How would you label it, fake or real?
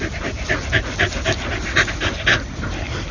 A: real